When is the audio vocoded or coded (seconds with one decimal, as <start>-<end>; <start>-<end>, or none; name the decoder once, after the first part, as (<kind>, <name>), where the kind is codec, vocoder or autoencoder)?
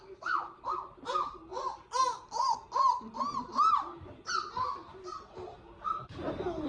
none